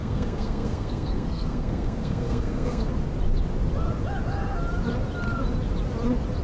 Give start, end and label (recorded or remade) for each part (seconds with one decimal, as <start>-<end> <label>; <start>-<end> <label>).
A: 0.0-2.9 remade; 2.9-6.4 recorded